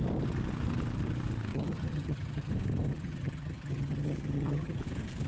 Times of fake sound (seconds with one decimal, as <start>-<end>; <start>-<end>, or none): 1.5-2.5; 2.9-4.8